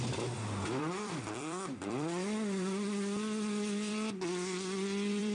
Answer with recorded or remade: remade